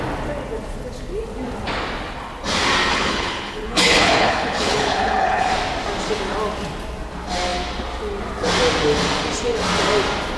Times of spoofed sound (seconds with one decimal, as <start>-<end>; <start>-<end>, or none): 2.9-5.5